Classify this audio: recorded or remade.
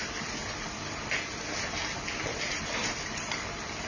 recorded